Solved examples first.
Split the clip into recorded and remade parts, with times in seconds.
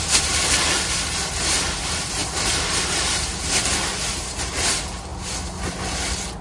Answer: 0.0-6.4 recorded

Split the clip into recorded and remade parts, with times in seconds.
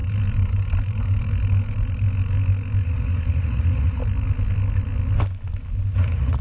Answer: 0.0-2.8 recorded; 2.8-4.0 remade; 4.0-5.9 recorded; 5.9-6.4 remade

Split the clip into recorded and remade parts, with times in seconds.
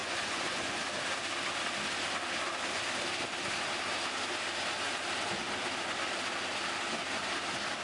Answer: 0.0-0.8 remade; 0.8-7.8 recorded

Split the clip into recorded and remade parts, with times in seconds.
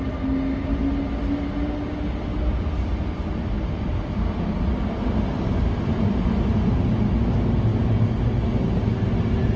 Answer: 0.0-9.6 recorded